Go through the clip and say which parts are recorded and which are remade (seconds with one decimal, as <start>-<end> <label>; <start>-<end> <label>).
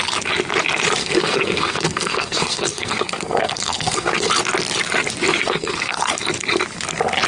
0.0-1.0 recorded; 1.0-4.3 remade; 4.3-5.4 recorded; 5.4-6.0 remade; 6.0-7.3 recorded